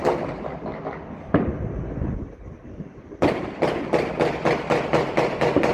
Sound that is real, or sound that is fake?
real